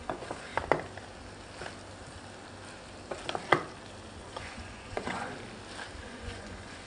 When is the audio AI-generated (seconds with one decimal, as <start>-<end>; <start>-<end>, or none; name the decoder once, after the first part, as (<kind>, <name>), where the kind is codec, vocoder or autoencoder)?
0.0-0.5 (vocoder, Vocos); 4.2-5.3; 6.0-6.9